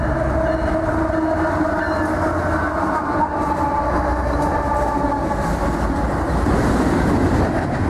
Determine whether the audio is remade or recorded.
recorded